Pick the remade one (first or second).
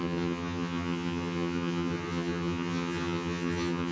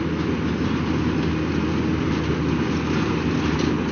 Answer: first